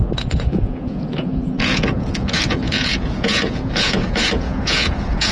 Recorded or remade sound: remade